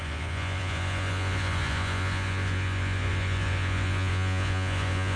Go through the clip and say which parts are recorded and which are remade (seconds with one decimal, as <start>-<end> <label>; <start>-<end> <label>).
0.0-5.2 remade